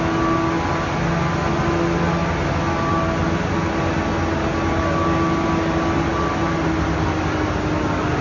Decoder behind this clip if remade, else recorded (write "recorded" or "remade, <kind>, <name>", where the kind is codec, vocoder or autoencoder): recorded